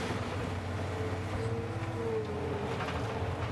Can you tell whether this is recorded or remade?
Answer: recorded